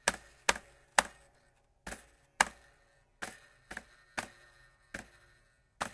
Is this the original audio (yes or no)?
yes